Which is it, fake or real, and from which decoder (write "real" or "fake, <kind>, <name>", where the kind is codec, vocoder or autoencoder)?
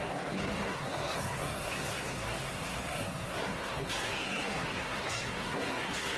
fake, codec, SNAC